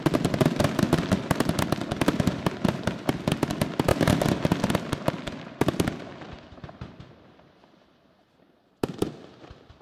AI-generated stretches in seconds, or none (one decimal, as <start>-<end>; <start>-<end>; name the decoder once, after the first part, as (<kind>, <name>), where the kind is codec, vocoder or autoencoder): none